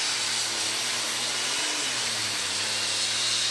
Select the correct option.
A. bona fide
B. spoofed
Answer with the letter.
A